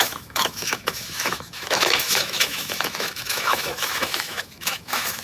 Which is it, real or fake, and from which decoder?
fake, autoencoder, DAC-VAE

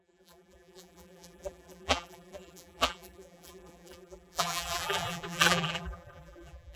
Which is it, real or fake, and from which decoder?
fake, vocoder, BigVGAN v2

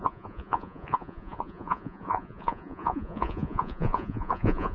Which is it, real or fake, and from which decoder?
fake, vocoder, Vocos